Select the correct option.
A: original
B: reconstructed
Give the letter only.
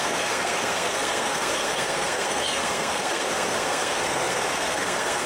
B